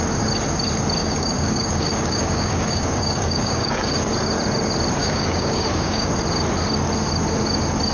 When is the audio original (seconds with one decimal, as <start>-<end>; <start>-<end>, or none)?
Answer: 0.0-1.0; 3.9-5.0; 6.1-7.9